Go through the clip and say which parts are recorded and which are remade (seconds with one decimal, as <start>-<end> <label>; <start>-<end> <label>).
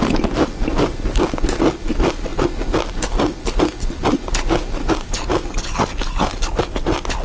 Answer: 0.0-7.2 recorded